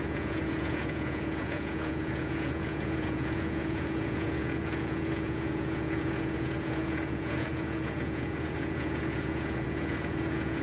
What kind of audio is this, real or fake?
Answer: fake